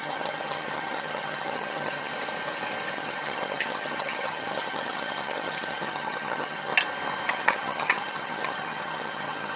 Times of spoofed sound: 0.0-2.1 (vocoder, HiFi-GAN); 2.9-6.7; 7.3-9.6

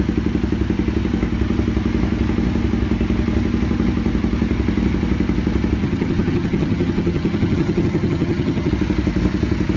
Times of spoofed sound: 5.8-8.7 (vocoder, HiFi-GAN)

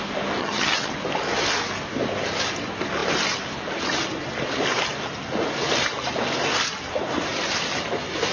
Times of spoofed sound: 0.4-0.9 (vocoder, HiFi-GAN)

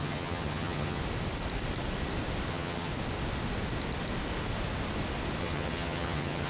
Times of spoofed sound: 0.0-1.0 (vocoder, HiFi-GAN); 2.5-2.9; 5.4-6.5